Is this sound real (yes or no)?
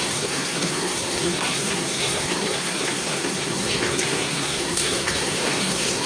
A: no